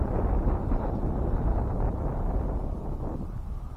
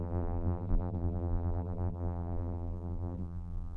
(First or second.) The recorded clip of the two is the first